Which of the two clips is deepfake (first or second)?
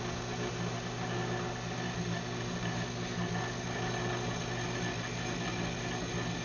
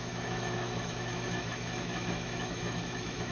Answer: second